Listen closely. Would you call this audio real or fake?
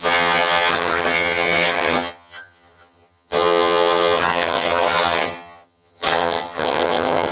fake